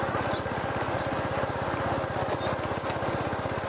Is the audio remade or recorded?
recorded